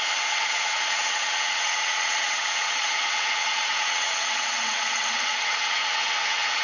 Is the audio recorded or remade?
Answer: remade